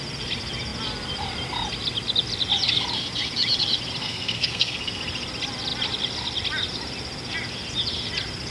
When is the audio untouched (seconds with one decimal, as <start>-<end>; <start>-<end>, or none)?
0.0-4.0; 5.0-8.5